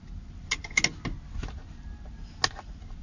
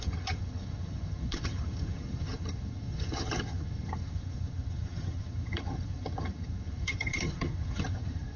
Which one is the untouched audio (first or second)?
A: first